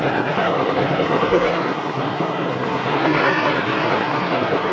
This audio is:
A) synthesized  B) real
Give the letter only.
A